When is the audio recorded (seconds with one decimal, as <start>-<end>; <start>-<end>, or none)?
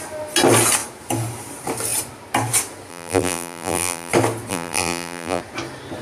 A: 0.0-2.9; 4.1-4.5; 5.4-6.0